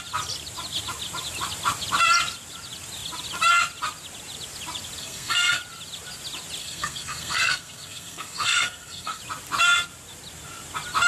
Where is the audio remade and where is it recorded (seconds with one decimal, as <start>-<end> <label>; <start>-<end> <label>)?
0.0-5.0 recorded; 5.0-5.6 remade; 5.6-6.6 recorded; 6.6-9.2 remade; 9.2-11.1 recorded